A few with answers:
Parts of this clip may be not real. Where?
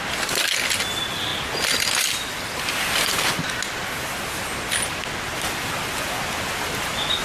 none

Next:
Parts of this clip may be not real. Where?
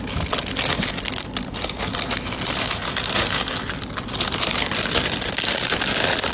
none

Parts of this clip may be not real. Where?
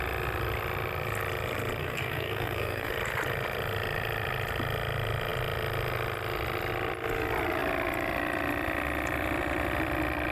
1.8-2.9 (codec, SNAC)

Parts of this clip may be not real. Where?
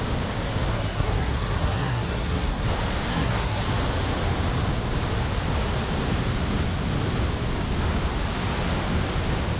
0.7-2.6 (codec, SNAC); 3.1-3.6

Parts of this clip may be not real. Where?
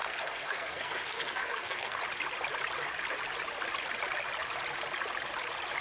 0.0-2.0 (codec, SNAC)